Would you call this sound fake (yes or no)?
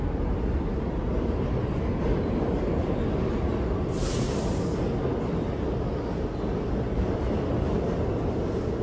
no